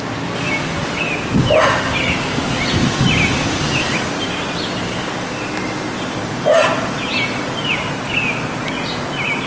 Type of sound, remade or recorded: recorded